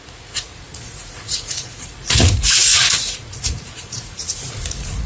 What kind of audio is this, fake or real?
fake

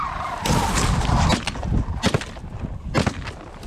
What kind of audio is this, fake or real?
real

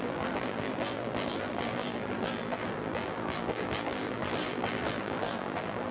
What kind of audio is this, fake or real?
fake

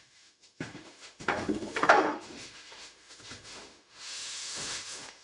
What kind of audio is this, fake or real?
fake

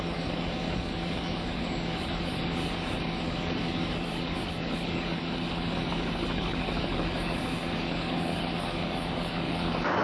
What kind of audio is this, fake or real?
fake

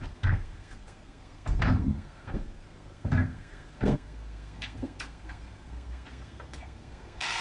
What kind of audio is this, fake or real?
fake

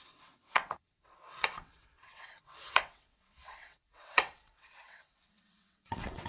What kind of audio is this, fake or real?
fake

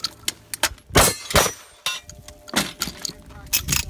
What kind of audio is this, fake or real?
real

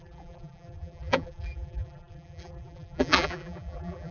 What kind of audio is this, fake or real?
fake